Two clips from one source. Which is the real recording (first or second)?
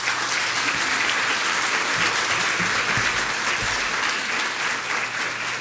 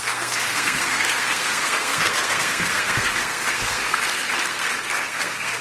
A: first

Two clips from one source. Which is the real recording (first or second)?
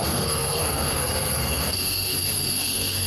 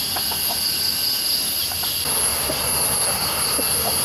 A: second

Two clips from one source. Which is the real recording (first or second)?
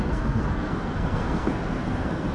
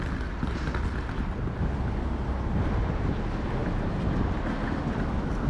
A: second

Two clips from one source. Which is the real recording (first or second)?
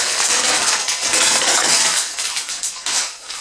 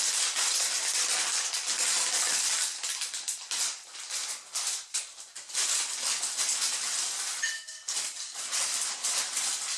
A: second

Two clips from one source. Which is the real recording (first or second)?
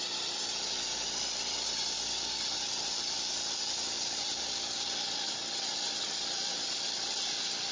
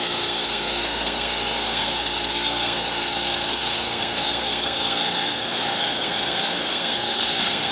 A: first